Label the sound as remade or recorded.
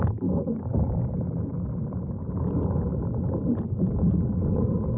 remade